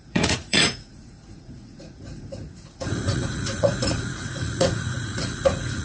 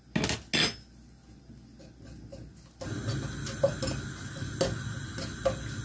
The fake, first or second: first